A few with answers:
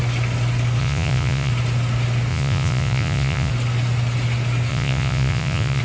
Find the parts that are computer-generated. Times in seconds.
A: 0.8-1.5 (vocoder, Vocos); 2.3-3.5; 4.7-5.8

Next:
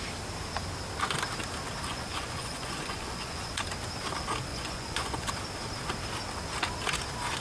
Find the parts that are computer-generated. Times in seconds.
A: 1.9-3.6 (vocoder, Vocos); 4.5-5.3

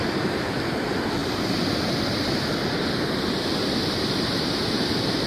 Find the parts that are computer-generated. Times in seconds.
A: 0.0-1.2 (vocoder, BigVGAN v2); 4.4-5.3

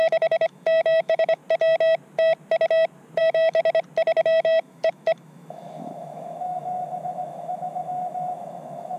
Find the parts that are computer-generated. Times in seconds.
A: 0.0-1.4 (autoencoder, DAC-VAE); 3.2-3.6; 4.2-9.0